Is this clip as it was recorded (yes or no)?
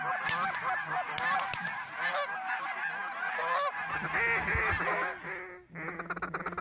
yes